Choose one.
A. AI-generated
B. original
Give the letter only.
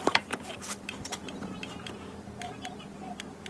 B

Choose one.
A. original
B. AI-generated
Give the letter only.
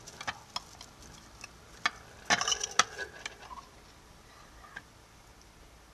A